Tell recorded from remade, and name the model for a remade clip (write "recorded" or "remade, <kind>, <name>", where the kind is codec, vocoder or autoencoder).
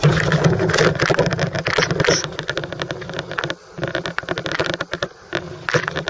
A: recorded